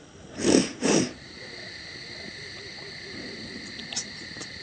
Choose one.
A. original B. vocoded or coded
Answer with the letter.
A